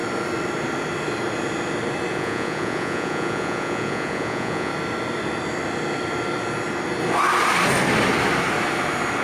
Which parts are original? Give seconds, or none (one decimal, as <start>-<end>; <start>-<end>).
0.0-2.1; 4.7-9.2